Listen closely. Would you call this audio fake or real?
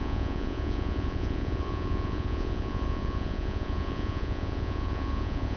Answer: fake